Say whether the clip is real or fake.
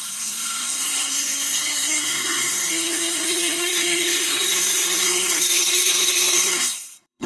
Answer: fake